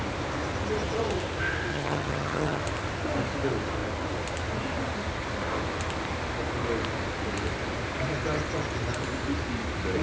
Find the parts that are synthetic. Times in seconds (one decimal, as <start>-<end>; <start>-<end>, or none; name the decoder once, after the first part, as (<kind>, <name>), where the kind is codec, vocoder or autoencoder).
1.7-2.6 (vocoder, HiFi-GAN)